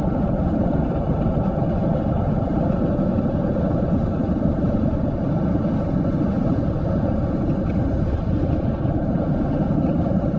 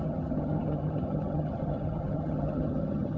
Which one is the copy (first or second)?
second